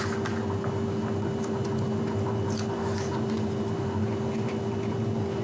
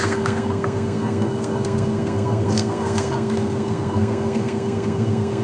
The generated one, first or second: second